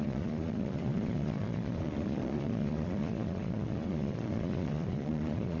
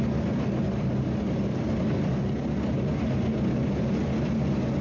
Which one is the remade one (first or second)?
first